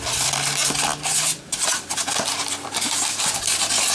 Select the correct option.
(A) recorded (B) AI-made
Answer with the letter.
A